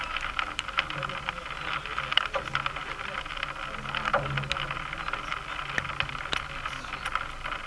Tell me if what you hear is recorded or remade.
recorded